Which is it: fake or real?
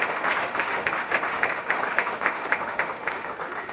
fake